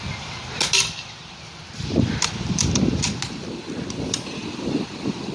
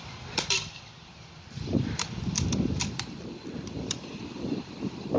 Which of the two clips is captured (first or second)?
first